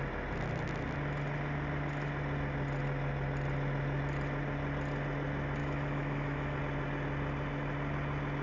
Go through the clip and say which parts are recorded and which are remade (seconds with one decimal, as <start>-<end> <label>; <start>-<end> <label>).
0.0-5.6 recorded; 5.6-6.6 remade; 6.6-8.4 recorded

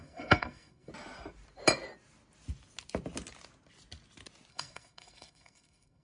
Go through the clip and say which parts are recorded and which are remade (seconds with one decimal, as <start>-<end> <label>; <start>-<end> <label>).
0.0-0.9 remade; 0.9-4.5 recorded; 4.5-6.0 remade

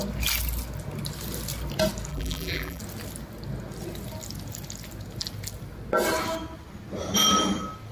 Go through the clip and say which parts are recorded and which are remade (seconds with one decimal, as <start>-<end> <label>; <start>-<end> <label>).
0.0-2.1 recorded; 2.1-2.8 remade; 2.8-7.9 recorded

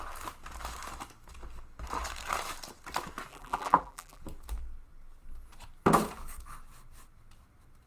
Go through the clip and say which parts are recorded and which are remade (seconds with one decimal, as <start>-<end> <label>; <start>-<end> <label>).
0.0-3.3 recorded; 3.3-4.2 remade; 4.2-7.9 recorded

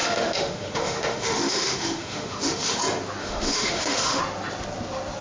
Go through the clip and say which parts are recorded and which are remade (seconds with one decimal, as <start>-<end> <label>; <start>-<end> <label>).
0.0-2.8 remade; 2.8-3.2 recorded; 3.2-4.2 remade; 4.2-5.2 recorded